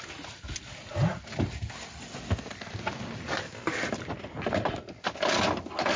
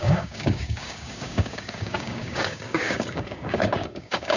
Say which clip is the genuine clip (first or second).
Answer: first